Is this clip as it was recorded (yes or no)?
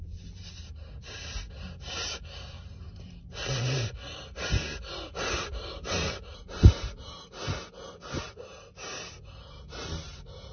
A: yes